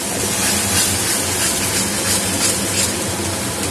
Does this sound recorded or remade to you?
recorded